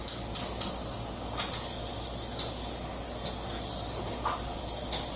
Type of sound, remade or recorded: recorded